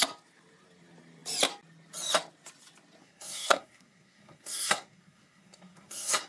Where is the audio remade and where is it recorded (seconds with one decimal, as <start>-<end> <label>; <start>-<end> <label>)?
0.0-3.0 recorded; 3.0-6.3 remade